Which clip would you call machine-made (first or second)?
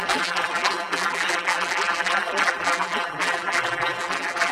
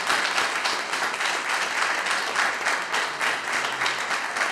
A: first